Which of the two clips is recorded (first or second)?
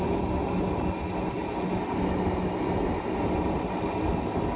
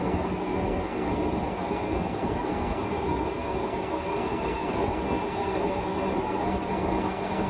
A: first